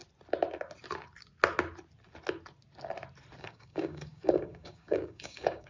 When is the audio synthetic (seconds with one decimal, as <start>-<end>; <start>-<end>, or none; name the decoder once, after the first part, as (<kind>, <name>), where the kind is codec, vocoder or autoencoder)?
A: 3.4-5.7 (codec, DAC)

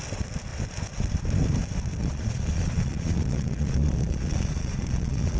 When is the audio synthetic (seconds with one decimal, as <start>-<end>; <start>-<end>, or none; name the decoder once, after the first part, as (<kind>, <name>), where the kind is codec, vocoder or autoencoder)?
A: 2.0-5.4 (vocoder, Vocos)

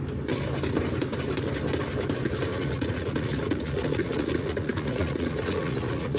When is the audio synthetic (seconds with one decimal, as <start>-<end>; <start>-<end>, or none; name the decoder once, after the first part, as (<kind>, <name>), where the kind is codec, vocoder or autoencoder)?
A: 2.5-6.2 (vocoder, Vocos)

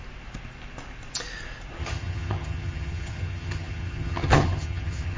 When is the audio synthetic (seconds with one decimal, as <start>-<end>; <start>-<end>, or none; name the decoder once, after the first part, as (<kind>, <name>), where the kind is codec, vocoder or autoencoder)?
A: 1.8-5.2 (vocoder, HiFi-GAN)

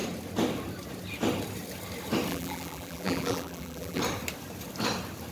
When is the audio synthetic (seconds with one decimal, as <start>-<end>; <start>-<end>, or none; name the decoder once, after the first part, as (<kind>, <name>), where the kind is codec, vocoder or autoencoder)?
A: 2.3-4.0 (vocoder, BigVGAN v2)